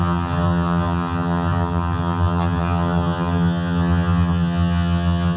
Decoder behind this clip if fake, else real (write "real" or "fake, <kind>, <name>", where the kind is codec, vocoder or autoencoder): fake, vocoder, HiFi-GAN